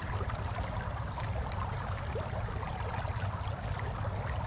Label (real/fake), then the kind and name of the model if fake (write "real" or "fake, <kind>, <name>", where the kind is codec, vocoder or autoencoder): real